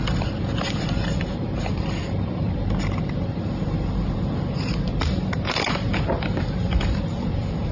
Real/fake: fake